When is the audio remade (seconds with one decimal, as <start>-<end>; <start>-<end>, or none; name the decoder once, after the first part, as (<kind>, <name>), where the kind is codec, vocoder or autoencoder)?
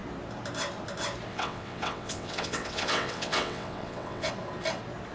1.3-4.3 (vocoder, WaveNeXt)